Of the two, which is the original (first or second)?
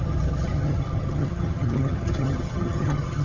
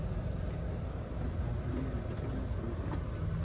second